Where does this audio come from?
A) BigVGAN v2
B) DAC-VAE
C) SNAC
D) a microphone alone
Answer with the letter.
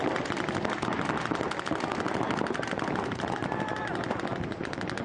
D